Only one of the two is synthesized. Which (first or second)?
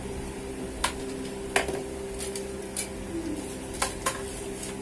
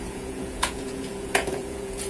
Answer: second